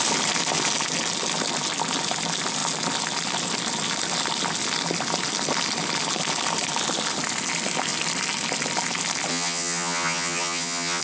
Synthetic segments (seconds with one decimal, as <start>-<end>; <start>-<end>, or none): 9.3-11.0